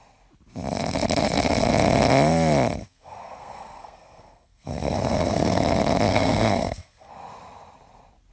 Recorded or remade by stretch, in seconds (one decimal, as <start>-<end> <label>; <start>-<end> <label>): 0.0-2.8 recorded; 2.8-5.6 remade; 5.6-6.1 recorded; 6.1-7.1 remade; 7.1-8.3 recorded